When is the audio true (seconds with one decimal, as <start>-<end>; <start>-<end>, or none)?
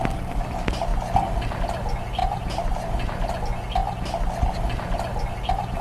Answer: 0.0-2.2; 3.4-5.8